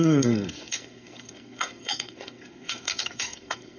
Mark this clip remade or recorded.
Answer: remade